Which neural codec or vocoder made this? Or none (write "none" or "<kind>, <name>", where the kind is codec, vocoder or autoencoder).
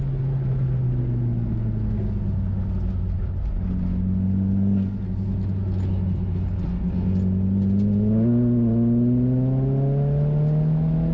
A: none